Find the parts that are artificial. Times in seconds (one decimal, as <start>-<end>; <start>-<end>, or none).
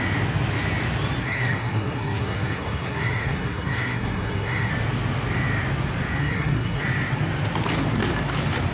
1.2-4.7; 6.2-6.8